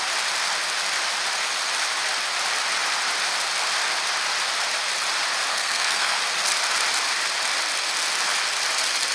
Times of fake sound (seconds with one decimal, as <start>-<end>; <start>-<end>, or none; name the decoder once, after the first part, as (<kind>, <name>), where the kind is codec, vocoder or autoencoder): 5.5-6.2 (codec, SNAC)